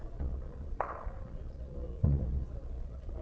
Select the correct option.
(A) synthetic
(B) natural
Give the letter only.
A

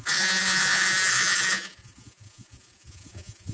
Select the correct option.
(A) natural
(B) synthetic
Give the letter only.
B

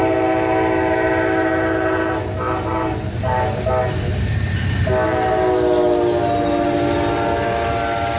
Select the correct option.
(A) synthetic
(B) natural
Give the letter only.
B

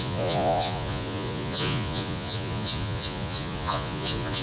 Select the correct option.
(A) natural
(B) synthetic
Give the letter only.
B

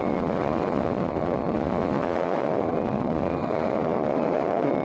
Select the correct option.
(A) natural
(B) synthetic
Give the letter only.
B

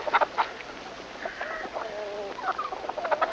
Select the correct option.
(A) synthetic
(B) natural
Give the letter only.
B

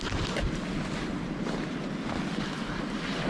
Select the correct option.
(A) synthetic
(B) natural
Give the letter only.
B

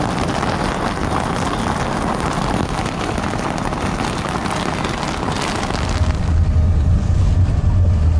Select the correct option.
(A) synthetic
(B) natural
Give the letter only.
B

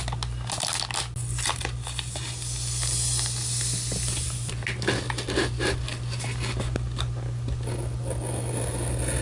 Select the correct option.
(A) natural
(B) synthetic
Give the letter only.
A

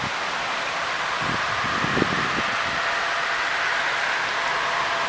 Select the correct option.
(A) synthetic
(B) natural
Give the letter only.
B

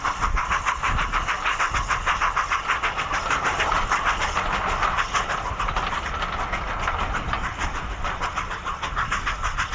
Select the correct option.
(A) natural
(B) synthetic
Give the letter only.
A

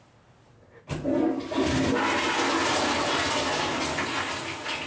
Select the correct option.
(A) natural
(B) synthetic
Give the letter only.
A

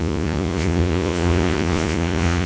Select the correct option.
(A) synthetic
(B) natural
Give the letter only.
A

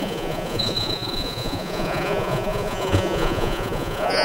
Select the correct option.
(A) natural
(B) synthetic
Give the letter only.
B